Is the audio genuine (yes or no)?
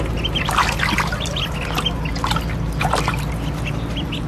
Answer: yes